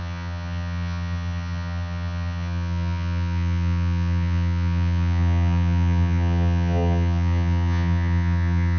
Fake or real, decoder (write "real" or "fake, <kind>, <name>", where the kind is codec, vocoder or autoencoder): fake, vocoder, HiFi-GAN